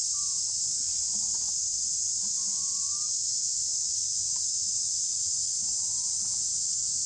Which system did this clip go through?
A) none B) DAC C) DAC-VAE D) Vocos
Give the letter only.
A